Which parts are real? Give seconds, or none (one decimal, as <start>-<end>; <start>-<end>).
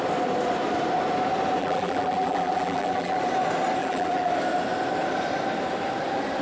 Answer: 0.0-1.6; 3.2-3.8; 4.3-6.4